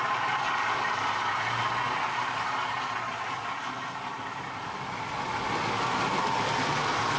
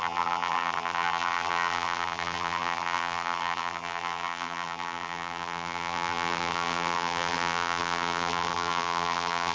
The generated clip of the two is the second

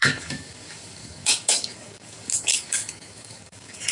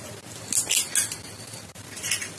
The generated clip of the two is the first